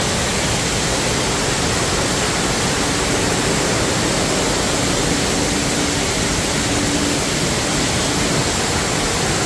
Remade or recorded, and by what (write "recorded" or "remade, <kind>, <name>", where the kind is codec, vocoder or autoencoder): recorded